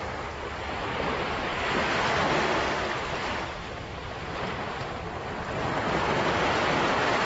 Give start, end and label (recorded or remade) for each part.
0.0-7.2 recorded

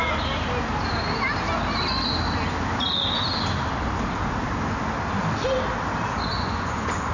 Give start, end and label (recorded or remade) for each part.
0.0-6.3 recorded; 6.3-7.1 remade